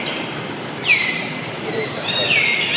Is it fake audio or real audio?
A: fake